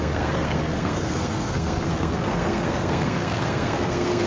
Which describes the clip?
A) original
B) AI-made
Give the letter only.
B